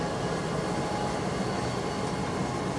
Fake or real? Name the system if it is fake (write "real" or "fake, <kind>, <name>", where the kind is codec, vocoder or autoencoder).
real